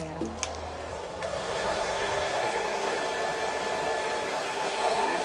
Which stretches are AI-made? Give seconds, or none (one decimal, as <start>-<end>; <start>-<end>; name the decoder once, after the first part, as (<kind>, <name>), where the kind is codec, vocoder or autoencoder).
0.9-3.0 (codec, SNAC); 4.3-5.2